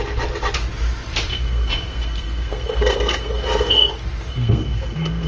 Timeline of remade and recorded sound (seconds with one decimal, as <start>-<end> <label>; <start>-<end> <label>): 0.0-1.3 recorded; 1.3-3.9 remade; 3.9-4.3 recorded; 4.3-5.3 remade